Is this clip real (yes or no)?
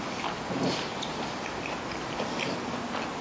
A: yes